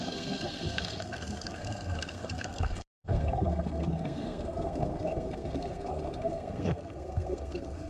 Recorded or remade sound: remade